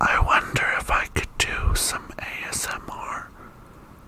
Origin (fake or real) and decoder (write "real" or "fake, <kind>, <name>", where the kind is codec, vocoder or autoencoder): real